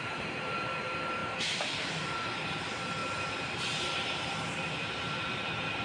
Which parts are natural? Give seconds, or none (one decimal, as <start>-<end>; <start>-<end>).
none